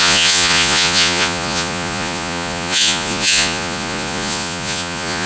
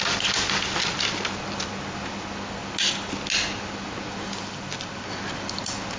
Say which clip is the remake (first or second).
first